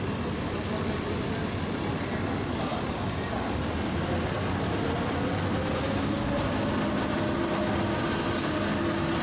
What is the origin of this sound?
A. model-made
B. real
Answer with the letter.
B